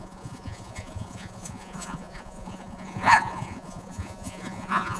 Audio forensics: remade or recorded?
remade